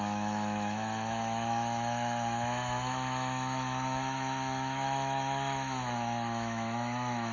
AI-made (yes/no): yes